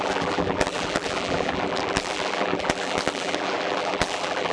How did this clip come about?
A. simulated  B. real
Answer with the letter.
A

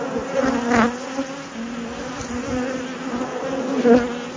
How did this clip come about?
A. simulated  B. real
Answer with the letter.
B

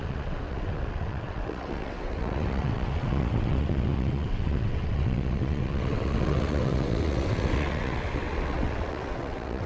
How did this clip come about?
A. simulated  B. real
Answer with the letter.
A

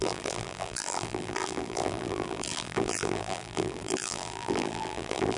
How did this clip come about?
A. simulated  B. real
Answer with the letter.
A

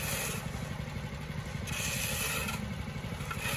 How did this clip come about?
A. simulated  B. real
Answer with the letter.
B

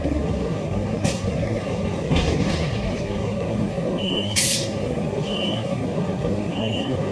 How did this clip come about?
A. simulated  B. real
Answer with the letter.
A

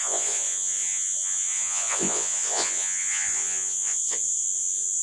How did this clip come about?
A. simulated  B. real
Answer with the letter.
A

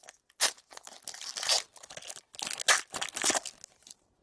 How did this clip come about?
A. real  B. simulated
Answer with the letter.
A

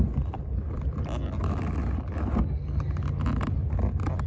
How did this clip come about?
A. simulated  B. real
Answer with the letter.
B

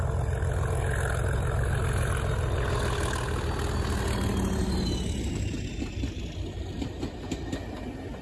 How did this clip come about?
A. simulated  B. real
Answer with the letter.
B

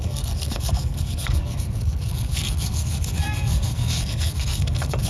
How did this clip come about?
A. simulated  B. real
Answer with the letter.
A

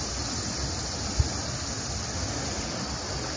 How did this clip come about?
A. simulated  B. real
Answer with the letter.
B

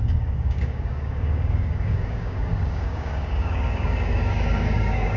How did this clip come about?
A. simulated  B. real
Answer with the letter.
A